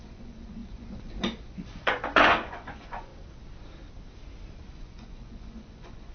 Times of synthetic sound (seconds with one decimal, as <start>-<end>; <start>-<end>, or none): 0.0-3.1; 4.7-6.1